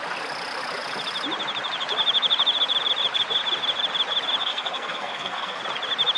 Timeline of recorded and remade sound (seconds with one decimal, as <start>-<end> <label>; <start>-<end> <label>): 0.0-4.4 recorded; 4.4-5.6 remade; 5.6-6.2 recorded